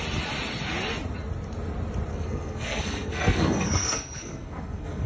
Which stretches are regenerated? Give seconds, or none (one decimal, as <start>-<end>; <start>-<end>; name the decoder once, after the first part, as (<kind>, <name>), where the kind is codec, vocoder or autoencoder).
2.1-5.1 (codec, SNAC)